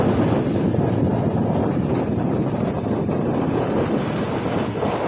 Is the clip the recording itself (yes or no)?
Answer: yes